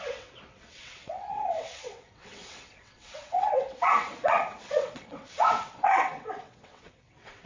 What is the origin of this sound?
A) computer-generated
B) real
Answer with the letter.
A